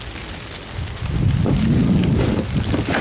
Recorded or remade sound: recorded